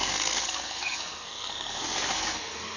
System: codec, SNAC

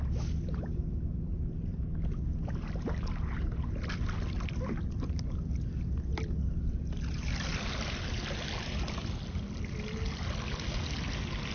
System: none